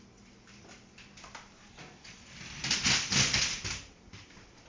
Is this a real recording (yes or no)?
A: no